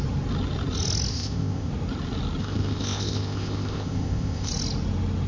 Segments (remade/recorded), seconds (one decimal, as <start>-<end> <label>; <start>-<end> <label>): 0.0-1.1 recorded; 1.1-1.7 remade; 1.7-2.4 recorded; 2.4-4.5 remade; 4.5-5.3 recorded